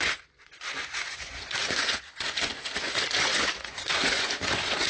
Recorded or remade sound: remade